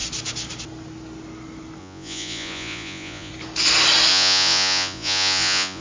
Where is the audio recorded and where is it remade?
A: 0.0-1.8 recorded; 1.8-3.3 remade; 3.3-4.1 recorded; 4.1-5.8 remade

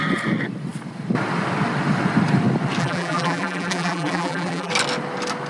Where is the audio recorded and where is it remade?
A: 0.0-2.8 recorded; 2.8-4.7 remade; 4.7-5.5 recorded